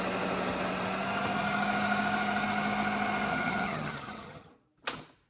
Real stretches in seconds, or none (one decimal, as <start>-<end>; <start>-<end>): 0.0-3.3; 4.5-5.3